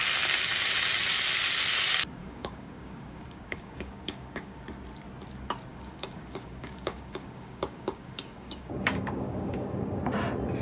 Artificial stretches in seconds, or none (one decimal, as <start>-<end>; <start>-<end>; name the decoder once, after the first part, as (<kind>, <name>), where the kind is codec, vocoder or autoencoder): 2.2-4.6 (codec, DAC); 5.7-10.0